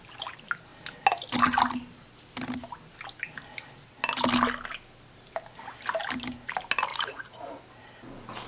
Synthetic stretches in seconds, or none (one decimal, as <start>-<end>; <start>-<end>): 6.9-7.6